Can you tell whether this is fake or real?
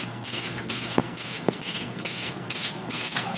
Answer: fake